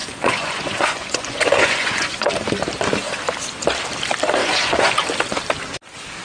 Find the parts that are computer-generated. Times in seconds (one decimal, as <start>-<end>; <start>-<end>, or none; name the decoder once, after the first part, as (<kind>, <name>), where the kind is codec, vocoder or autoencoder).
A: 0.0-2.3 (vocoder, Vocos); 4.4-4.9